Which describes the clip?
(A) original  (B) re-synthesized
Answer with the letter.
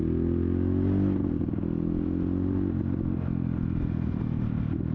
A